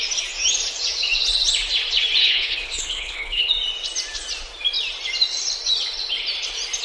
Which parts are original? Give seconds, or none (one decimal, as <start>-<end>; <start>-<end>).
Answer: 0.0-2.2; 3.5-6.8